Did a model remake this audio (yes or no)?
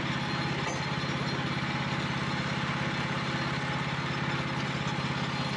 no